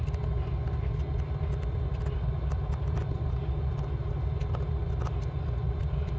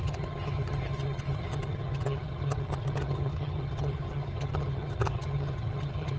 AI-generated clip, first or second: second